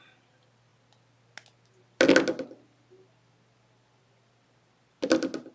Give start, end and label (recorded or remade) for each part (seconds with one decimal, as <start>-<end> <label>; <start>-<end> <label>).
0.0-5.5 recorded